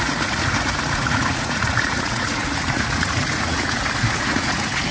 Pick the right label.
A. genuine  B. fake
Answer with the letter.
B